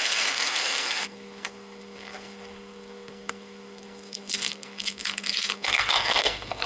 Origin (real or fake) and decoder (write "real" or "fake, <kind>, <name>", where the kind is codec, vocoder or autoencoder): fake, codec, SNAC